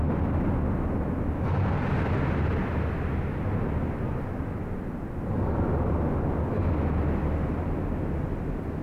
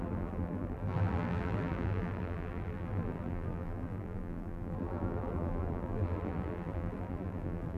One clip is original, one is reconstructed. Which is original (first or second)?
first